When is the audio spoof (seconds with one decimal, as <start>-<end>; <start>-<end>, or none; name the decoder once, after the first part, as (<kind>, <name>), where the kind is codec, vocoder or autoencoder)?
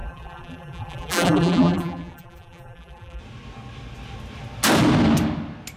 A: 0.0-3.2 (vocoder, BigVGAN v2)